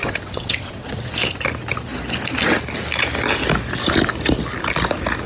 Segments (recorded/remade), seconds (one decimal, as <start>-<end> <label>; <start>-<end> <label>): 0.0-1.0 remade; 1.0-5.3 recorded